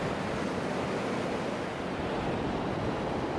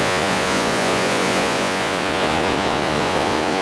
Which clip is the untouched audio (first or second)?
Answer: first